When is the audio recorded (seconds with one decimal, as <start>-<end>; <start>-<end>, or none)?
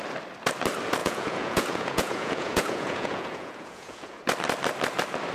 0.0-1.0; 4.2-5.3